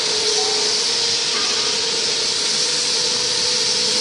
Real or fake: real